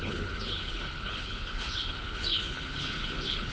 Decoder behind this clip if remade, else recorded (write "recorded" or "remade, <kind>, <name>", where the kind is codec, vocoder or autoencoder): remade, codec, HILCodec